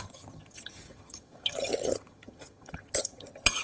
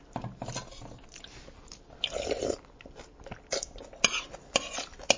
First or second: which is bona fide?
second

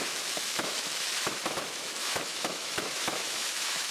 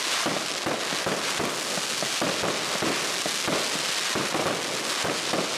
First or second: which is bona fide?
second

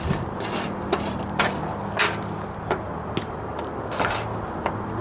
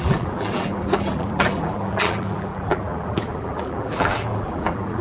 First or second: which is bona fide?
first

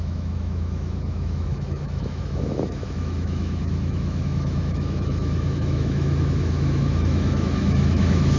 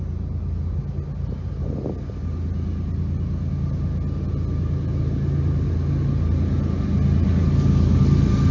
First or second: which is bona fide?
second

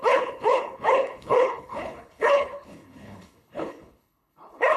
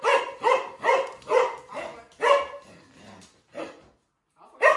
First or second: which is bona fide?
second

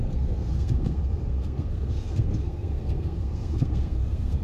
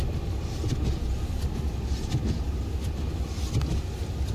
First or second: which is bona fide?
second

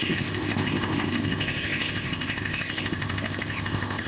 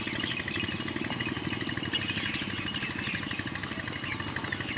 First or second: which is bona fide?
second